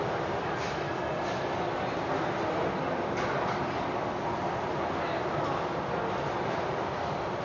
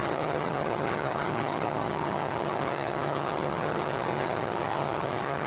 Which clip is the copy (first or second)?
second